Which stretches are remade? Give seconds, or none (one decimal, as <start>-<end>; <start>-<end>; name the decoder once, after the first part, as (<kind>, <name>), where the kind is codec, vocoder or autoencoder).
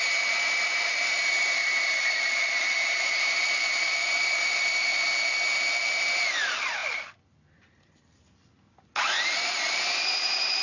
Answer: 0.0-4.9 (vocoder, BigVGAN v2); 5.9-10.6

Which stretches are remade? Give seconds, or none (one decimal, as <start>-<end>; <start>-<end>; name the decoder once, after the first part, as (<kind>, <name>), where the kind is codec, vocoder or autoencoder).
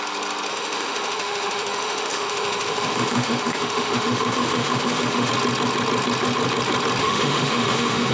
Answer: 0.5-5.3 (autoencoder, DAC-VAE); 7.0-8.1